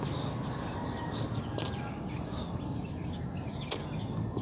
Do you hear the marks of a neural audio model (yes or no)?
no